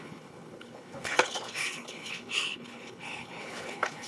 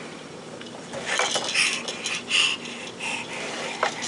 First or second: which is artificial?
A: first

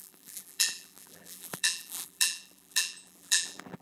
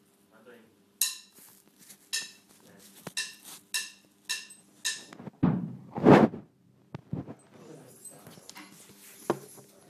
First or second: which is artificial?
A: first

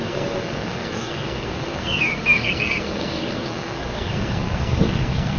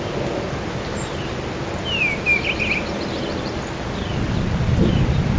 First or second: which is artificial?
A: first